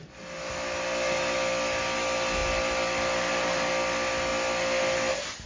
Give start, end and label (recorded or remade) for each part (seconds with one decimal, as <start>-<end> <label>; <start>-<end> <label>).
0.0-5.5 recorded